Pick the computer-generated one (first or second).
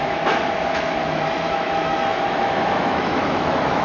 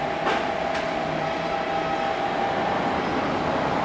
first